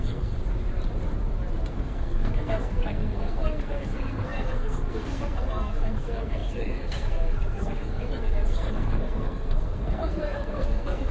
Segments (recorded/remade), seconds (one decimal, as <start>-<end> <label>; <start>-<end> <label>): 0.0-0.4 remade; 0.4-1.7 recorded; 1.7-11.1 remade